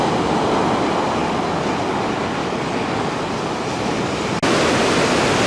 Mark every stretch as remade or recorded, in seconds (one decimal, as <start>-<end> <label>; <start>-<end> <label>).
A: 0.0-2.4 recorded; 2.4-3.1 remade; 3.1-5.5 recorded